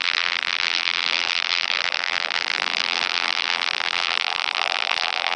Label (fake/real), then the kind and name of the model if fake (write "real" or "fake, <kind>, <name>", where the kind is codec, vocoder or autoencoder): fake, vocoder, BigVGAN v2